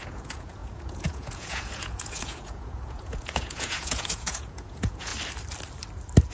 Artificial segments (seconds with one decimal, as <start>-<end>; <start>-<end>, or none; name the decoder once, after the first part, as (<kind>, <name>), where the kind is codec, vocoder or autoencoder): 0.0-5.1 (vocoder, Vocos)